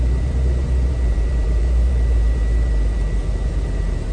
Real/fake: fake